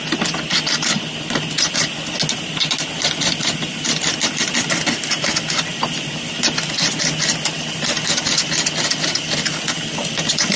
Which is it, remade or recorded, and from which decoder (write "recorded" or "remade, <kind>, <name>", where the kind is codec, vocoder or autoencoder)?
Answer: recorded